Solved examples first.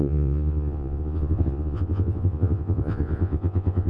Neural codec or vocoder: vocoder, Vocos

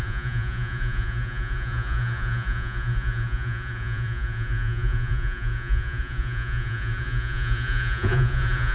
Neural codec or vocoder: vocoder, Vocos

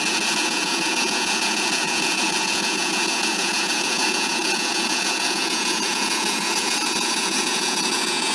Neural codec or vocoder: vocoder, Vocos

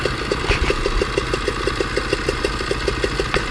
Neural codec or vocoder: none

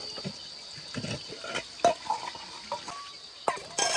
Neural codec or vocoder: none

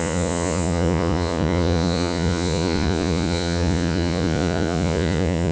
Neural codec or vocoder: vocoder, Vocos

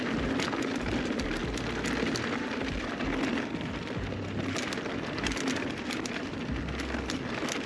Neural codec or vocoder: none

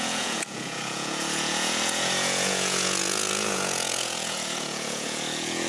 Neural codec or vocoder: vocoder, Vocos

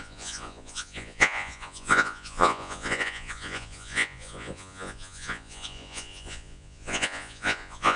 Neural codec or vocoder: vocoder, Vocos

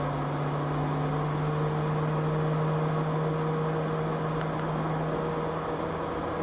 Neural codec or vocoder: none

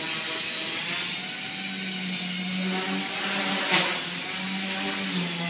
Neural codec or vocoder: none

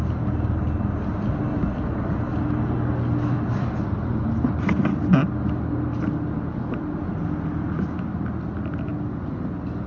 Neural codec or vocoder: none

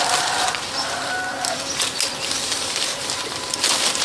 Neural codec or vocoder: none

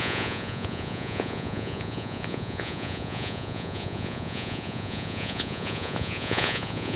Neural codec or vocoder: vocoder, Vocos